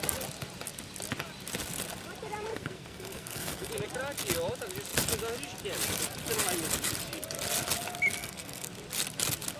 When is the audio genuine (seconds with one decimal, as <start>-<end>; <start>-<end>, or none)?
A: 0.0-2.5; 3.7-8.2; 8.7-9.6